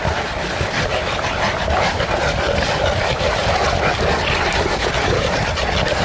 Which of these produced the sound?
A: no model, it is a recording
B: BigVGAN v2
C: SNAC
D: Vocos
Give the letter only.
A